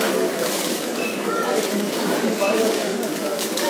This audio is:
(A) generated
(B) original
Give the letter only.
A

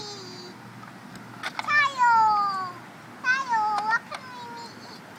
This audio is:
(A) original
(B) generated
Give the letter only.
A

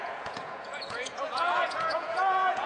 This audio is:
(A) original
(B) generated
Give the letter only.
B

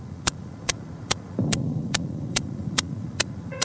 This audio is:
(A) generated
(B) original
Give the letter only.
A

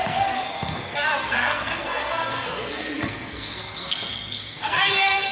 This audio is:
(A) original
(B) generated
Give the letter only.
B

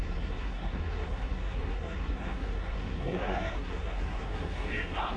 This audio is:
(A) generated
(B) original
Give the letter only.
A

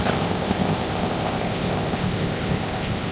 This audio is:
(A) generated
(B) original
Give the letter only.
A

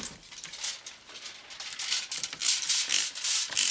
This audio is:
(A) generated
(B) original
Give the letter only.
B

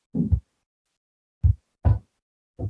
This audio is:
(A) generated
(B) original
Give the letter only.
B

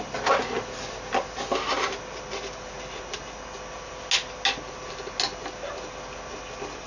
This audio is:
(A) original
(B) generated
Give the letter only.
A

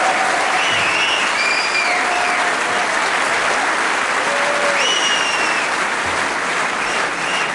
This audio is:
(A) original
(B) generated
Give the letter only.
A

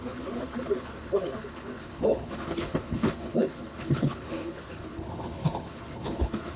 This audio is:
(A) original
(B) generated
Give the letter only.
B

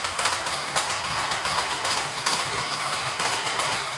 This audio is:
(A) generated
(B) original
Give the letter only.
A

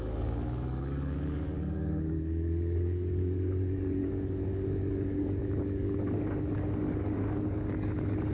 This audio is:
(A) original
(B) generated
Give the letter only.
B